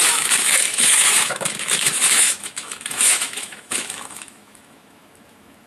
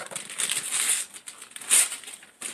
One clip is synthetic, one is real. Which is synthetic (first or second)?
first